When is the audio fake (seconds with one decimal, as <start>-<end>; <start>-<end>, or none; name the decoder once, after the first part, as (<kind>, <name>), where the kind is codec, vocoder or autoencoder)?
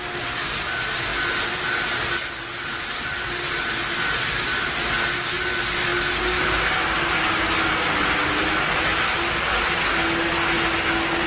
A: none